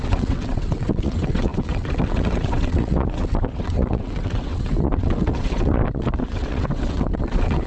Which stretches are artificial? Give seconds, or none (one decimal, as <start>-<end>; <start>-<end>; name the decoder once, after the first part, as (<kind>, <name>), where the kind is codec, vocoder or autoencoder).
0.0-7.7 (vocoder, WaveNeXt)